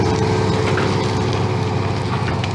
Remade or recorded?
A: recorded